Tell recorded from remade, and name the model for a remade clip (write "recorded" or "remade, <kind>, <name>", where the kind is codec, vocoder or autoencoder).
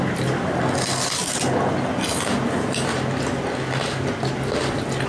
recorded